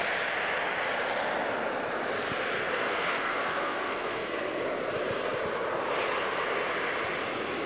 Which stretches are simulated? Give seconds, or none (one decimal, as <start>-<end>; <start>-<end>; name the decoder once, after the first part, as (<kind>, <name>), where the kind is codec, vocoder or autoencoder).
2.7-4.6 (codec, SNAC)